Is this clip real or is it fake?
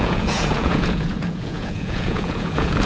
fake